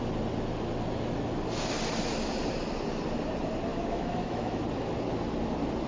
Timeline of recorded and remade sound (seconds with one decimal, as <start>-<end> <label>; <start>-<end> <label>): 0.0-3.7 recorded; 3.7-4.6 remade; 4.6-5.9 recorded